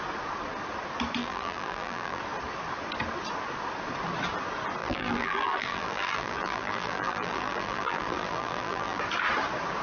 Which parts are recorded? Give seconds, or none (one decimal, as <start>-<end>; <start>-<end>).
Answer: 0.0-1.2; 2.2-4.8; 9.0-9.8